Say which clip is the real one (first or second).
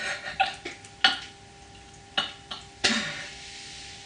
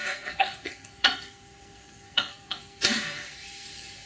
first